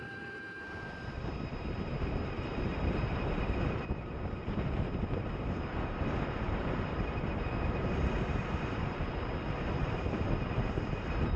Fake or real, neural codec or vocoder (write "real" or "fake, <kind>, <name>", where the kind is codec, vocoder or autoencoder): fake, vocoder, BigVGAN v2